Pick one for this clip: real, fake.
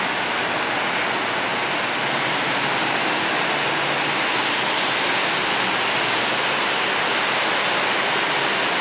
real